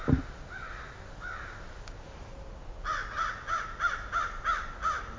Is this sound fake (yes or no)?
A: no